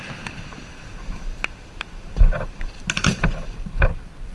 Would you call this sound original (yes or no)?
no